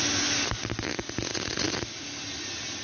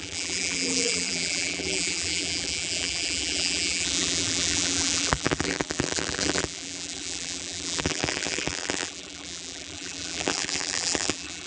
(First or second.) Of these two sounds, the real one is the first